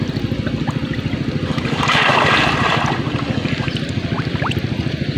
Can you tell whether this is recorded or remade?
recorded